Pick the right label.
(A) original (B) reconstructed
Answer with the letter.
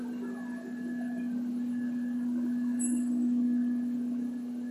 B